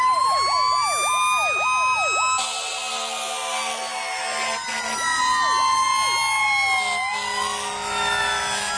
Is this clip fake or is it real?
real